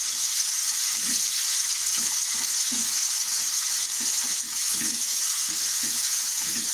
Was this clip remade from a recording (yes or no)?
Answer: yes